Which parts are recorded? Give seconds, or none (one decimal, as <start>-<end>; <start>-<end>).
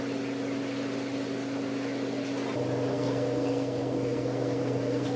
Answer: 0.0-2.9